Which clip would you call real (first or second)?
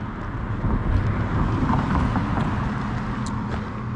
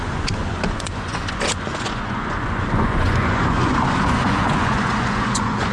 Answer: first